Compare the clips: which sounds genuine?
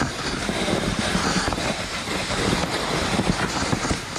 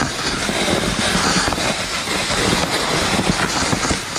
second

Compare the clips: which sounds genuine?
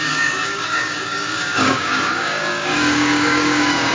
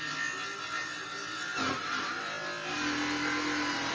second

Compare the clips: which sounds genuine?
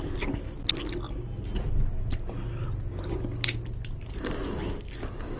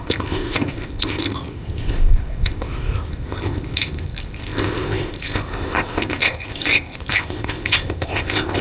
first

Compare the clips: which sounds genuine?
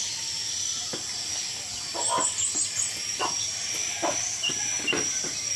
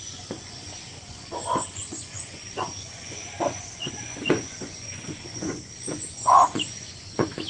first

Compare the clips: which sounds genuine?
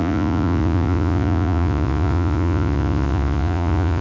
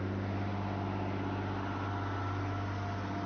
second